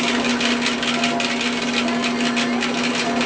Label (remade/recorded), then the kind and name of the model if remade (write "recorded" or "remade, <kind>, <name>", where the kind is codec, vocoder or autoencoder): recorded